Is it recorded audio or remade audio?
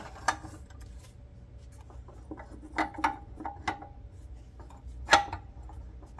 recorded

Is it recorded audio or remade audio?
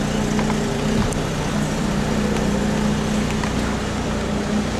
recorded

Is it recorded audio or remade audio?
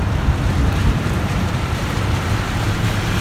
remade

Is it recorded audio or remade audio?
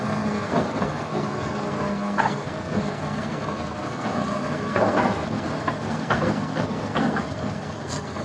remade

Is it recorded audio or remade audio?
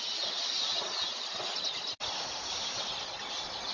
recorded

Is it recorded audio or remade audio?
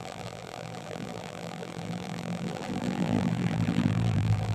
remade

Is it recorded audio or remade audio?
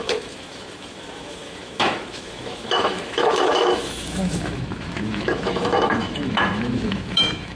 remade